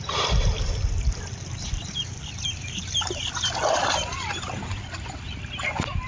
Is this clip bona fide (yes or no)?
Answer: no